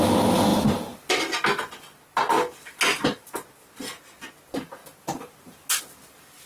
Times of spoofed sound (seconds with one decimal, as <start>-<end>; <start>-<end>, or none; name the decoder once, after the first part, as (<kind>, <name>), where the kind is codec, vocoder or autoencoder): none

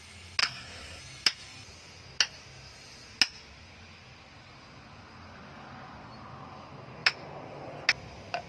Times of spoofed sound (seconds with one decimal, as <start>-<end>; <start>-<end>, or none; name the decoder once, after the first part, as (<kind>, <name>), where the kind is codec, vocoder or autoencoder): 0.4-1.0 (codec, SNAC)

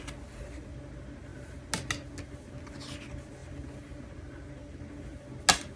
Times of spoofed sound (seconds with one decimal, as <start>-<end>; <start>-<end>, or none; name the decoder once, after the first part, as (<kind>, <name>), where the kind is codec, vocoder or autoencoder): none

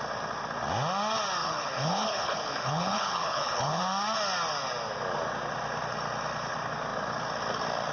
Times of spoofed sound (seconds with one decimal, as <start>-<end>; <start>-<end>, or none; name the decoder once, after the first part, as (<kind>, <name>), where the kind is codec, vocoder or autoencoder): 1.4-3.8 (codec, HILCodec)

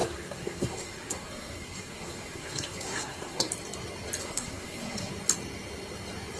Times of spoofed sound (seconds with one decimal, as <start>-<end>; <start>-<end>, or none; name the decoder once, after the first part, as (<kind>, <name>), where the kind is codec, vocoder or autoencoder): 0.0-3.5 (codec, SNAC); 4.2-5.1

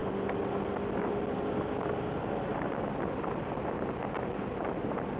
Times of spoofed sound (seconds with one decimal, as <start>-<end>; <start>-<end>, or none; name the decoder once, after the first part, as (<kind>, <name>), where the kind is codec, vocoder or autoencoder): none